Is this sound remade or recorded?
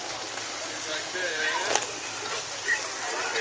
recorded